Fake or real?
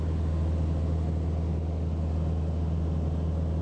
real